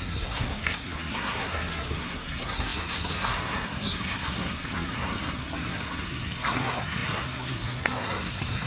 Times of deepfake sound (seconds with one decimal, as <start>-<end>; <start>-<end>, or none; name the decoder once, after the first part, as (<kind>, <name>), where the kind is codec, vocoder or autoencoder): 0.0-8.7 (codec, SNAC)